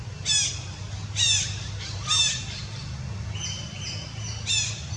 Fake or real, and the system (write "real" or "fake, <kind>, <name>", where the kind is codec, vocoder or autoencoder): real